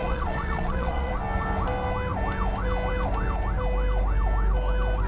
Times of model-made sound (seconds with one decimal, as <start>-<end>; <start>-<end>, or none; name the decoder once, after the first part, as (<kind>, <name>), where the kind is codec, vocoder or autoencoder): 0.0-1.1 (vocoder, Vocos)